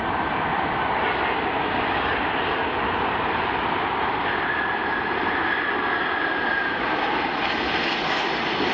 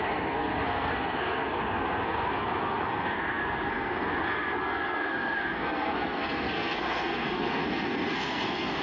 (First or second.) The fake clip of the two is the second